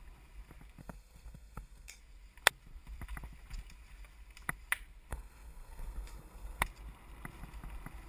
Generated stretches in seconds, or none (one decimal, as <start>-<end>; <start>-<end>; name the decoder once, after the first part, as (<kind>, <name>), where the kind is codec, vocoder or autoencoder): 0.8-2.0 (codec, SNAC); 5.1-6.6